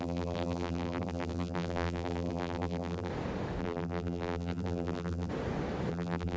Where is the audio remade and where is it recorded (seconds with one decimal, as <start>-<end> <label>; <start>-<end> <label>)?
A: 0.0-3.1 remade; 3.1-3.6 recorded; 3.6-5.3 remade; 5.3-5.9 recorded; 5.9-6.4 remade